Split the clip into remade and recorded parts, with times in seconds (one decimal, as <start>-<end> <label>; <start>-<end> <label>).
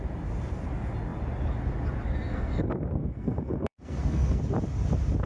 0.0-2.3 recorded; 2.3-4.4 remade; 4.4-5.3 recorded